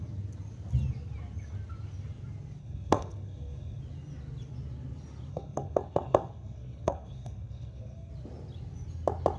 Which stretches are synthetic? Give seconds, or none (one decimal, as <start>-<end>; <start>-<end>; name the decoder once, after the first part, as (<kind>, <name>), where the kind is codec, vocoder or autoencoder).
2.6-3.8 (codec, SNAC); 5.3-8.1